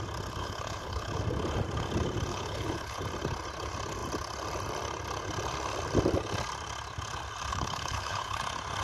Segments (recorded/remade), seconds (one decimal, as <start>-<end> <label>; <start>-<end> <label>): 0.0-0.4 recorded; 0.4-1.2 remade; 1.2-2.3 recorded; 2.3-3.0 remade; 3.0-7.5 recorded; 7.5-8.4 remade; 8.4-8.8 recorded